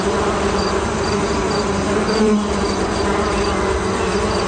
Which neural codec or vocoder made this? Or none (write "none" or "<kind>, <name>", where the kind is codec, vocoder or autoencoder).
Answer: none